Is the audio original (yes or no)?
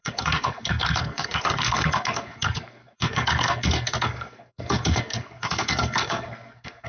no